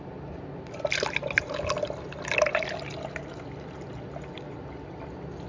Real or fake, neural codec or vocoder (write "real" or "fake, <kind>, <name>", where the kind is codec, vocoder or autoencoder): real